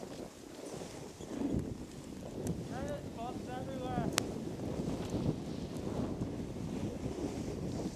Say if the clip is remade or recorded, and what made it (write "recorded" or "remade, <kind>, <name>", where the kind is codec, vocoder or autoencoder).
recorded